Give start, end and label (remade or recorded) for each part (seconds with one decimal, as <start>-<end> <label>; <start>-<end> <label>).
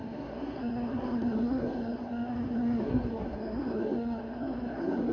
0.0-5.1 remade